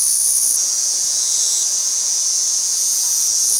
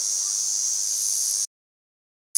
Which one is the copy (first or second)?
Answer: first